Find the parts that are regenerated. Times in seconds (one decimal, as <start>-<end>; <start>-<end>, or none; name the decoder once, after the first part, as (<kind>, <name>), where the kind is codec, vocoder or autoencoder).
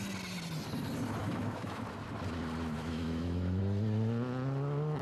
1.2-1.8 (autoencoder, DAC-VAE); 2.8-3.6